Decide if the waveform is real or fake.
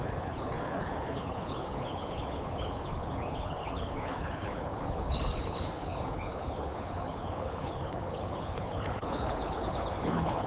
fake